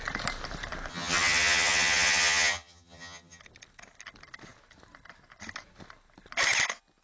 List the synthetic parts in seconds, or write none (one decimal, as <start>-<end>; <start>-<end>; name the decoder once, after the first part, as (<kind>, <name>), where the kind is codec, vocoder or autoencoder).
0.9-3.4 (vocoder, HiFi-GAN)